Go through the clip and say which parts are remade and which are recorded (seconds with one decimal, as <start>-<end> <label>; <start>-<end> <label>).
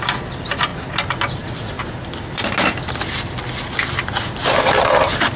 0.0-0.7 recorded; 0.7-2.8 remade; 2.8-5.4 recorded